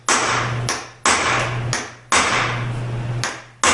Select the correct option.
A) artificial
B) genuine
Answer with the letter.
B